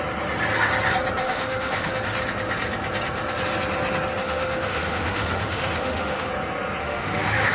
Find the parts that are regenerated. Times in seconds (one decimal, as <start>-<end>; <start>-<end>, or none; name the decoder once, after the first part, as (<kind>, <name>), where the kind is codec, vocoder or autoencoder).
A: 1.2-1.9 (autoencoder, DAC-VAE); 4.2-6.3; 6.8-7.5